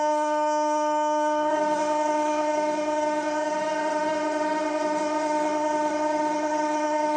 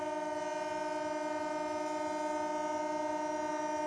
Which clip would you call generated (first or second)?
first